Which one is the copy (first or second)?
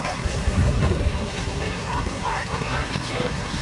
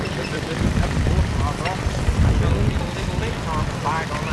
first